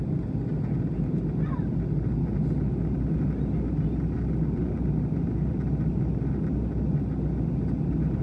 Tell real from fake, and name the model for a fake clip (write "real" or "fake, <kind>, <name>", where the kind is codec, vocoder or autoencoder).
real